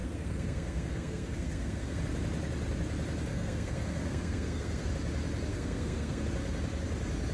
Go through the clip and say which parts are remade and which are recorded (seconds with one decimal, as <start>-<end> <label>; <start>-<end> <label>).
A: 0.0-2.0 remade; 2.0-3.3 recorded; 3.3-4.9 remade; 4.9-5.5 recorded; 5.5-6.2 remade; 6.2-7.3 recorded